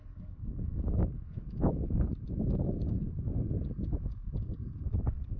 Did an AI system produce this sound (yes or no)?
yes